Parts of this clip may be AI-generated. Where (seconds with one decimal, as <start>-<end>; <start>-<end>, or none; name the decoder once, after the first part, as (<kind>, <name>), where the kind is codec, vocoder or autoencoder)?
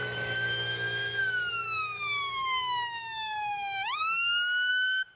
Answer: 0.0-5.2 (autoencoder, DAC-VAE)